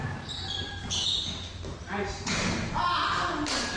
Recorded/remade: recorded